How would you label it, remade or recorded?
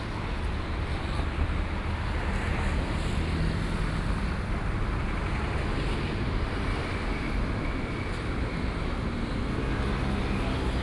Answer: recorded